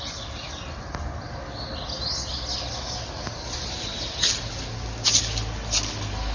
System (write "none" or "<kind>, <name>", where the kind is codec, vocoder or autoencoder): none